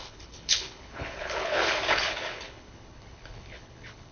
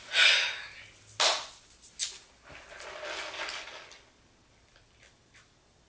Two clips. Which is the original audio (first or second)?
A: second